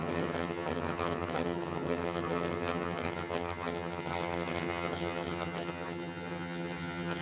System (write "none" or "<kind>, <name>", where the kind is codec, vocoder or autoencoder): vocoder, HiFi-GAN